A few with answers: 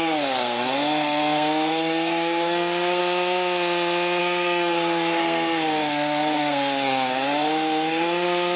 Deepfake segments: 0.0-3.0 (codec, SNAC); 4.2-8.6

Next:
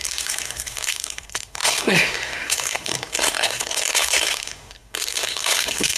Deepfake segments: 0.0-6.0 (codec, SNAC)